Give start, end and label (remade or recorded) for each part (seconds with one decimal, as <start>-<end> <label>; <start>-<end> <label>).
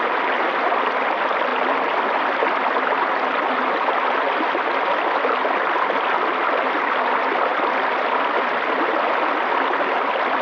0.0-10.4 recorded